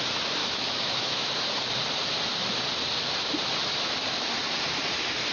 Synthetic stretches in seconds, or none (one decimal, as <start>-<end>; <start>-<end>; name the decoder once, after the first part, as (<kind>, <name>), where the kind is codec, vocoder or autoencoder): 0.4-1.3 (autoencoder, DAC-VAE)